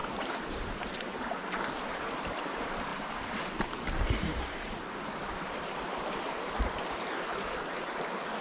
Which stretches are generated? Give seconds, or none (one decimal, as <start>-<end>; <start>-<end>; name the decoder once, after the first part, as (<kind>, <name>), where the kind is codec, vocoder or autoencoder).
0.0-1.4 (vocoder, BigVGAN v2); 2.9-6.8